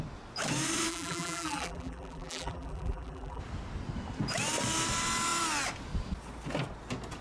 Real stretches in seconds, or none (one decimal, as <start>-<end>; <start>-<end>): 0.0-0.9; 3.4-7.2